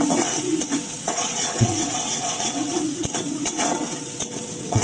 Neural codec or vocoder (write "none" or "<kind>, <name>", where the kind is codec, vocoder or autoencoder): vocoder, WaveNeXt